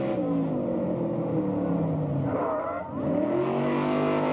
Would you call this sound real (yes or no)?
yes